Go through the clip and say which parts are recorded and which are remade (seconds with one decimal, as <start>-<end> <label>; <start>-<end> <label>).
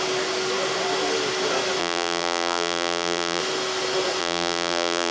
0.0-1.8 recorded; 1.8-3.4 remade; 3.4-4.2 recorded; 4.2-5.1 remade